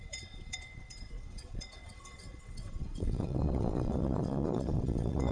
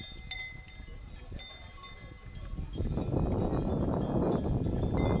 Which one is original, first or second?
second